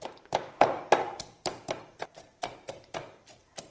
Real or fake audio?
fake